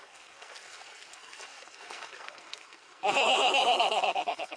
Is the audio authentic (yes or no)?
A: no